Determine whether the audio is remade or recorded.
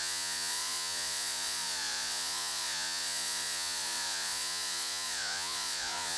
remade